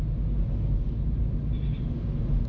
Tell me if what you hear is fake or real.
real